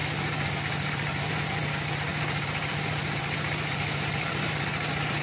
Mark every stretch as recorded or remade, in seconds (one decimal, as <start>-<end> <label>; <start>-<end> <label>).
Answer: 0.0-1.7 remade; 1.7-2.1 recorded; 2.1-4.6 remade; 4.6-5.2 recorded